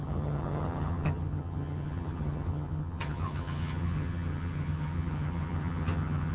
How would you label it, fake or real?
fake